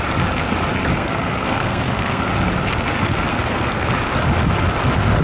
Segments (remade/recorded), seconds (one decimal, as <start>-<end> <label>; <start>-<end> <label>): 0.0-0.9 recorded; 0.9-2.3 remade; 2.3-3.3 recorded; 3.3-3.9 remade; 3.9-5.2 recorded